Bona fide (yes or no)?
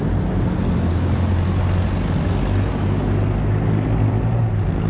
yes